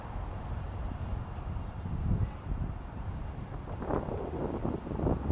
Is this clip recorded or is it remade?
recorded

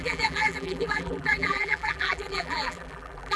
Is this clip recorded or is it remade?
remade